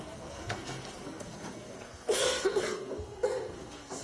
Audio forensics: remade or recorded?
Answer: remade